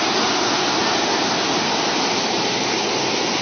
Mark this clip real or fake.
real